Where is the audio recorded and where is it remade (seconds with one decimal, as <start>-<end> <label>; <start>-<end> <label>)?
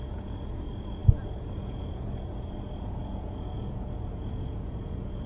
0.0-5.3 remade